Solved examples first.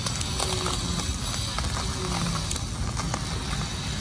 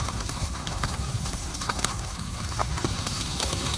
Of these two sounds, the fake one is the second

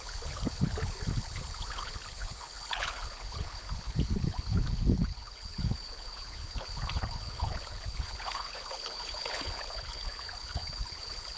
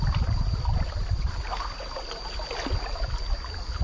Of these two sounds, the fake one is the first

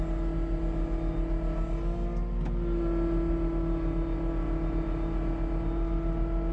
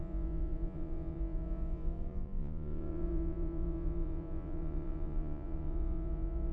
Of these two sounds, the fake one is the second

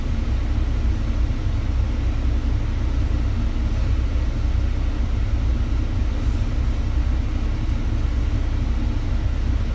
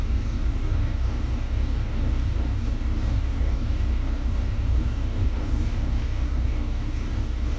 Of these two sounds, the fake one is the second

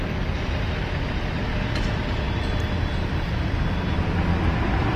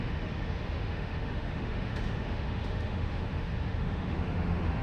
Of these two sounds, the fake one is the second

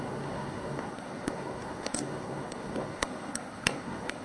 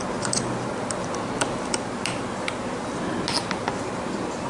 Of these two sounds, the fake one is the first